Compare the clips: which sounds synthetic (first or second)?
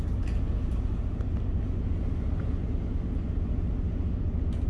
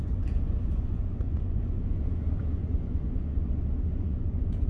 second